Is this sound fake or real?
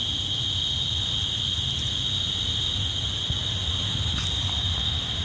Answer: real